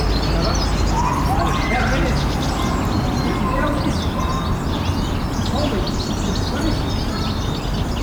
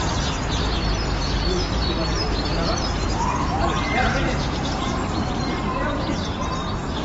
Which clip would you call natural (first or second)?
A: first